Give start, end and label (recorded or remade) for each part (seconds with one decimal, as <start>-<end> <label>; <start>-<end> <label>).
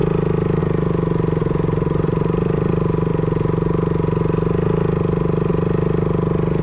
0.0-1.4 recorded; 1.4-2.7 remade; 2.7-6.6 recorded